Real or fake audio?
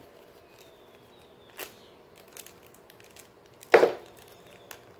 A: real